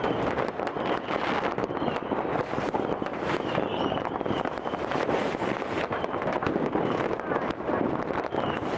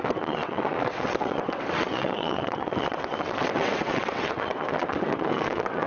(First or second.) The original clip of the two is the first